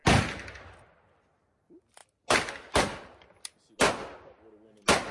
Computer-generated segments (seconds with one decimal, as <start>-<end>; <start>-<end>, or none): none